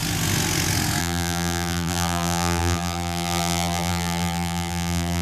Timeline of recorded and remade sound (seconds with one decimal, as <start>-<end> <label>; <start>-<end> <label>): 0.0-1.0 recorded; 1.0-5.2 remade